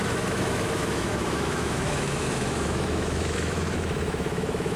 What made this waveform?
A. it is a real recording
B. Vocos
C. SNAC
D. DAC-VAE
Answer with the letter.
D